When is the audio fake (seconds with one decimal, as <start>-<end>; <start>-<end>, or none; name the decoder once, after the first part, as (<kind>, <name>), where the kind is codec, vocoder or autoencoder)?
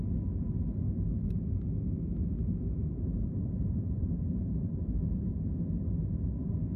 2.8-5.5 (vocoder, BigVGAN v2)